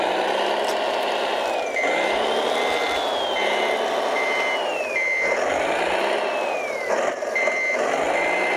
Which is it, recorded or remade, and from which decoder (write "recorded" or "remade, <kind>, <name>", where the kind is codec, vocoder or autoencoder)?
recorded